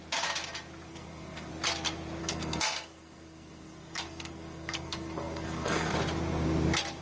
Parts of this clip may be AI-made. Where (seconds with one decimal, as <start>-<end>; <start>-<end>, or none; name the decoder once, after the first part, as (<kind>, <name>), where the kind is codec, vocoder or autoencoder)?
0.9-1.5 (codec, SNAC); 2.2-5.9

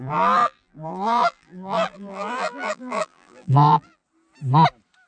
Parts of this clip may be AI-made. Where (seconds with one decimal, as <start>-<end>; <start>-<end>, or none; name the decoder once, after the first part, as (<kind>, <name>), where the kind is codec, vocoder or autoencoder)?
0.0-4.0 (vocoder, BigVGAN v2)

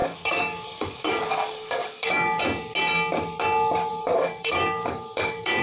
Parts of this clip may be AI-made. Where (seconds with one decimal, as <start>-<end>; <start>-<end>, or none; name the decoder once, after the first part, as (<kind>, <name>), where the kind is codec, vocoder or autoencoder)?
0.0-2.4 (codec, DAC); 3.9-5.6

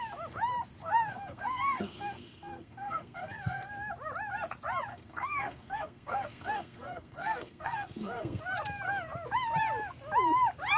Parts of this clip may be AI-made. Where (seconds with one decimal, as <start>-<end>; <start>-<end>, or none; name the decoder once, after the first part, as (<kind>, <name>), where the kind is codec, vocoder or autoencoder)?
0.8-3.7 (codec, SNAC); 4.9-8.4